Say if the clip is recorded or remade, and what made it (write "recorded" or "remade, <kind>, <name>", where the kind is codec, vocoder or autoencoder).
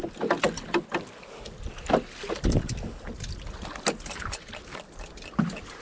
recorded